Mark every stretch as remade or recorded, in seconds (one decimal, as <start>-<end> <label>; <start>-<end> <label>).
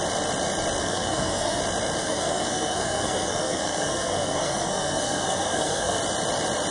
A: 0.0-0.8 recorded; 0.8-1.6 remade; 1.6-2.0 recorded; 2.0-6.0 remade; 6.0-6.7 recorded